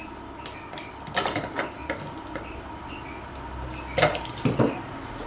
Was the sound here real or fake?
real